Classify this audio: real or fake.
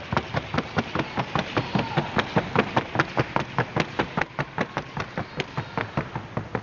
real